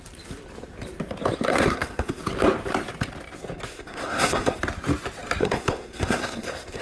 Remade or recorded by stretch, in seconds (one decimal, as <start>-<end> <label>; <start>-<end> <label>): 0.0-1.5 recorded; 1.5-2.2 remade; 2.2-3.7 recorded; 3.7-4.6 remade; 4.6-5.4 recorded; 5.4-6.8 remade